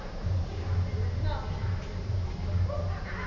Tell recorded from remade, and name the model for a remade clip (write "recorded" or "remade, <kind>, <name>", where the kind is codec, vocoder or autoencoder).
recorded